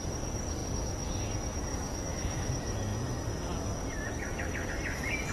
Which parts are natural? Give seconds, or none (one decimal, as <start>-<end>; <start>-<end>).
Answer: 0.0-1.7; 2.5-5.3